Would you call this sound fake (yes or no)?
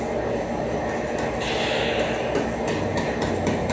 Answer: no